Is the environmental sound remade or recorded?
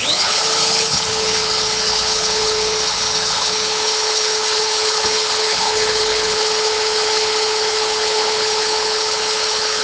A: remade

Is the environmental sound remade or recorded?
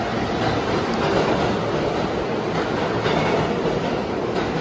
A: recorded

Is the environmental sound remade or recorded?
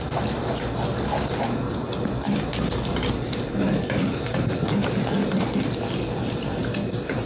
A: recorded